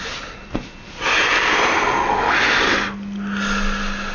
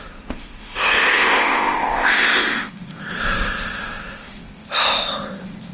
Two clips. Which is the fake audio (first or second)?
second